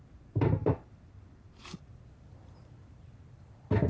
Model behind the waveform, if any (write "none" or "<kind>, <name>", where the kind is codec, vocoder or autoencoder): none